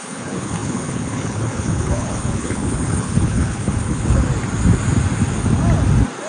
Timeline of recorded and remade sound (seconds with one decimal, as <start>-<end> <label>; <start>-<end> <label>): 0.0-4.3 remade; 4.3-6.3 recorded